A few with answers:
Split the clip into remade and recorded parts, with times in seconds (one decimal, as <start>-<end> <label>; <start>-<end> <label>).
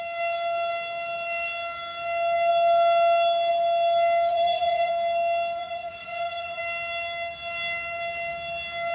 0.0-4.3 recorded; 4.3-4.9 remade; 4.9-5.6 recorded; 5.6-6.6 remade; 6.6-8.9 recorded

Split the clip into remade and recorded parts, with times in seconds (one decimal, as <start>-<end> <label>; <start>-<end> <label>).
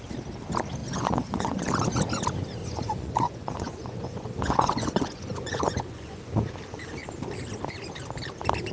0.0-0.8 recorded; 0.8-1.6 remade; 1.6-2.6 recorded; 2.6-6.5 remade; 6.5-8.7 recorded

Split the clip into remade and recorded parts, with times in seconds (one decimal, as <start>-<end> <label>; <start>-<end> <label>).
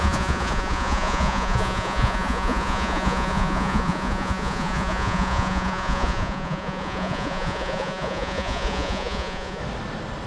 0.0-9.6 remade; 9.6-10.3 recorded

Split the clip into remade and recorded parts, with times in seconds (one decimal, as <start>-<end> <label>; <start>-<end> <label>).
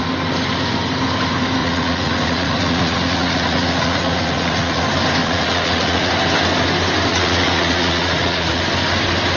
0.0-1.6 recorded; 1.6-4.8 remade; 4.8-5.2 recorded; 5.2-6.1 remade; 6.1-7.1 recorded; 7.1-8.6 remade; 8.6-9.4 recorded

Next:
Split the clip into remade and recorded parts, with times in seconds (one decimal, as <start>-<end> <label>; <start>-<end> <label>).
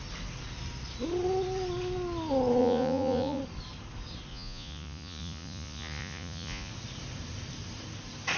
0.0-2.6 recorded; 2.6-3.4 remade; 3.4-4.3 recorded; 4.3-6.7 remade; 6.7-8.4 recorded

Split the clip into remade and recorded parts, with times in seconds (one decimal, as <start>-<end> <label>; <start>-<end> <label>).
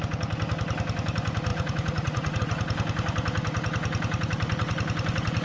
0.0-1.5 recorded; 1.5-2.4 remade; 2.4-5.4 recorded